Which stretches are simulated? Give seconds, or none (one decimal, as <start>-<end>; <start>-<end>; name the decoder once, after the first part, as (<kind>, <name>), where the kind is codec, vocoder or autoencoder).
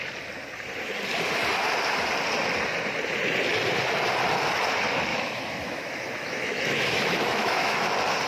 5.1-7.9 (autoencoder, DAC-VAE)